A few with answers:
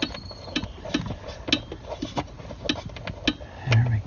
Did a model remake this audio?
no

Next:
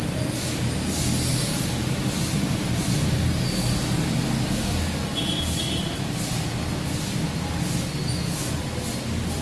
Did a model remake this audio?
no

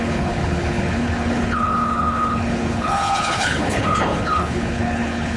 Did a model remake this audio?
yes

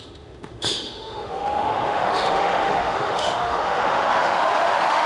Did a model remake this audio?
yes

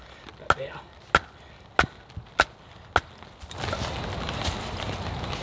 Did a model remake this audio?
no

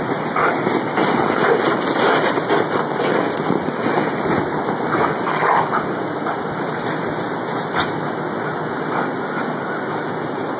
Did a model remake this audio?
no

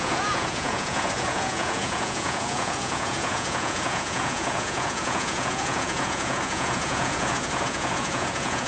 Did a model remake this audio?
yes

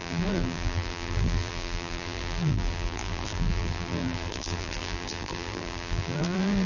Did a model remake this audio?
yes